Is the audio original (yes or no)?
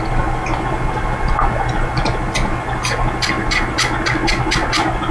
yes